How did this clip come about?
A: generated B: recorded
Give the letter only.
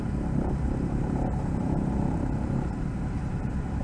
A